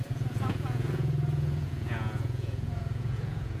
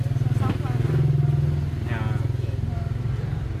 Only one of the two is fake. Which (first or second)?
first